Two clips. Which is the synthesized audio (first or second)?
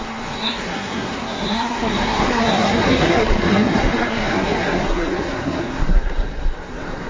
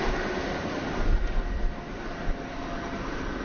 first